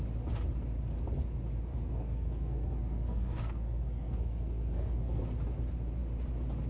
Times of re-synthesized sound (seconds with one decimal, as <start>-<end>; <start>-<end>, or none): 1.7-5.2